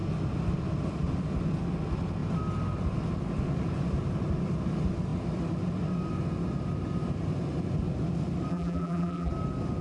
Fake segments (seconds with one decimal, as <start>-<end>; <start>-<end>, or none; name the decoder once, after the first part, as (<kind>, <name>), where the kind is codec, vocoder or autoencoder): 8.5-9.3 (vocoder, BigVGAN v2)